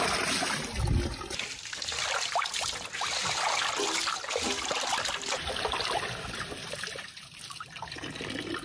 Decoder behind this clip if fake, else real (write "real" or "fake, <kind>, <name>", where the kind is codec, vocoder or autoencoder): real